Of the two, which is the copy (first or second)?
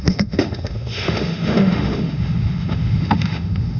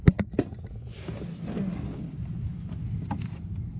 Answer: first